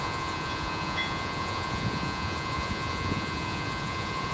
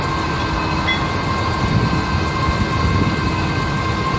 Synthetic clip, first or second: first